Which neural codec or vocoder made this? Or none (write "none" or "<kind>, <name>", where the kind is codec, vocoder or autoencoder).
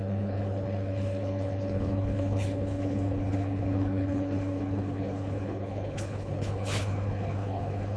codec, HILCodec